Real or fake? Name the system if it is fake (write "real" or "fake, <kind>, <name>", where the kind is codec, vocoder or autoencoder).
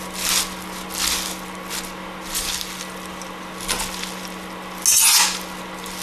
real